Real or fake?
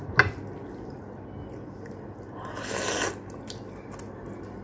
real